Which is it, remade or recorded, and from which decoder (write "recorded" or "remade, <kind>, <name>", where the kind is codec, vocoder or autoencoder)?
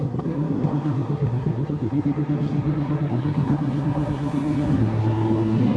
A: remade, codec, SNAC